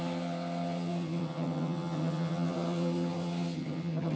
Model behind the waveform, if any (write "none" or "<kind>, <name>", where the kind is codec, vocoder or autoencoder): vocoder, HiFi-GAN